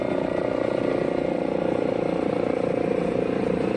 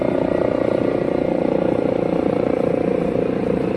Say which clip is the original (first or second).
first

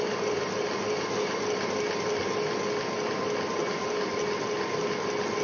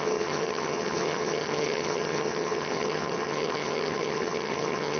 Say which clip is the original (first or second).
first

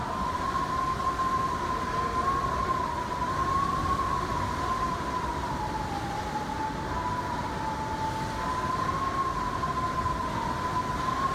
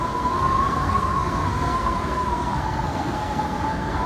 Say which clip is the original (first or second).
first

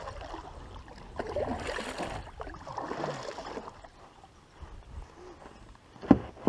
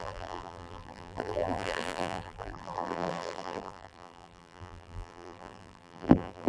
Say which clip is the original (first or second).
first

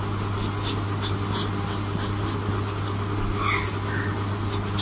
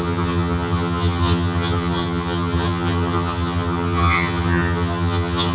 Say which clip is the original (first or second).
first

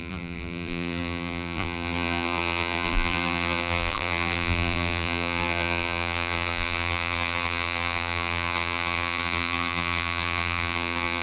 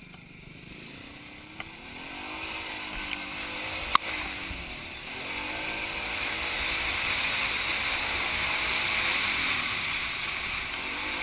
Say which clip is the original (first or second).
second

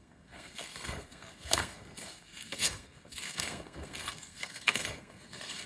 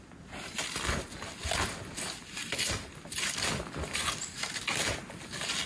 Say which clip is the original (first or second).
second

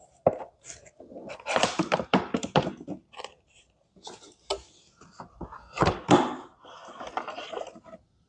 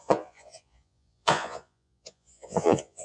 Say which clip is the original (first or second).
first